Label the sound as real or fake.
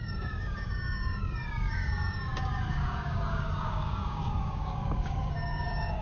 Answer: fake